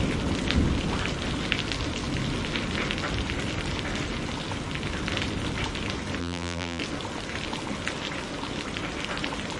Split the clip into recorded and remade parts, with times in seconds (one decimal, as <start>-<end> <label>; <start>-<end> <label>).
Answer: 0.0-6.2 recorded; 6.2-6.8 remade; 6.8-9.6 recorded